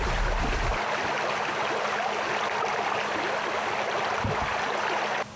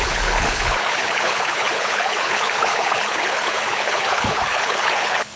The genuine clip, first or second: first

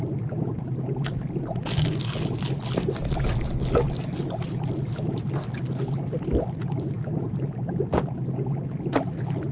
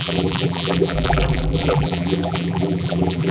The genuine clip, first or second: first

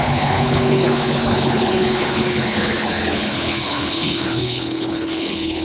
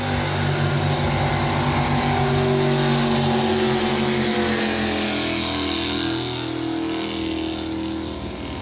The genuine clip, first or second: second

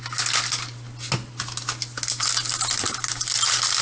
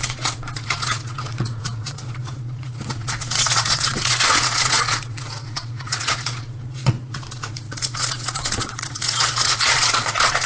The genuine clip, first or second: first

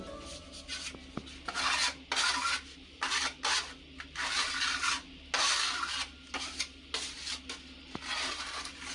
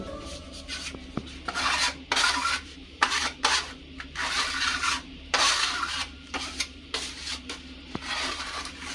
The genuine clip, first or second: first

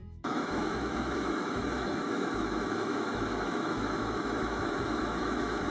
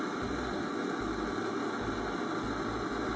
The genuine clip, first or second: second